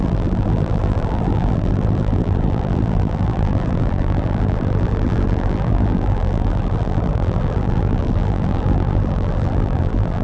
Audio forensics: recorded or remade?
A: remade